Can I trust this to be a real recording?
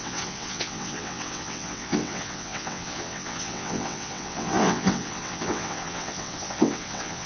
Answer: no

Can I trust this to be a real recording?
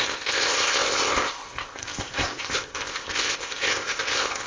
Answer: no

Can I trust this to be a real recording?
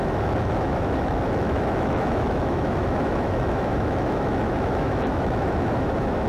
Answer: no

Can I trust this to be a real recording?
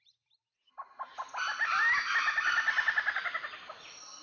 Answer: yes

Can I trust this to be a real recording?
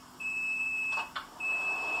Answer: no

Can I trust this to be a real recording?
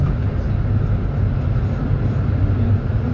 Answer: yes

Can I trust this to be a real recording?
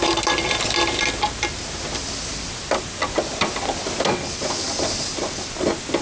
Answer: yes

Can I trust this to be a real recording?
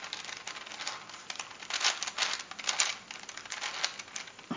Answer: yes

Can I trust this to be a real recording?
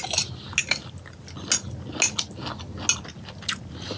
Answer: yes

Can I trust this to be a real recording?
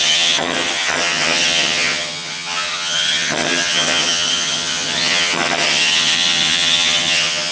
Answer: no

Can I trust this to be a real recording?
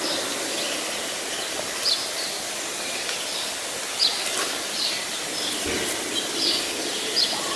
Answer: yes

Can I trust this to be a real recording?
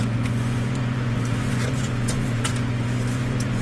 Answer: no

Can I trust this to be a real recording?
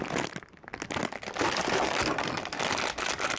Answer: yes